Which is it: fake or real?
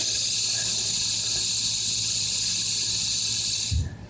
real